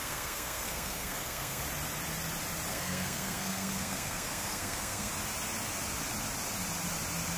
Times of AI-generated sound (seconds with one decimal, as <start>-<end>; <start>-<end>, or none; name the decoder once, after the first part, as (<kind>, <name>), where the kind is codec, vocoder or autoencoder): 0.0-1.6 (codec, SNAC); 2.7-5.1